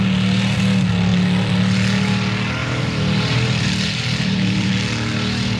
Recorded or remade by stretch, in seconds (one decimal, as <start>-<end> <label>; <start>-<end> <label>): 0.0-2.6 recorded; 2.6-4.7 remade; 4.7-5.6 recorded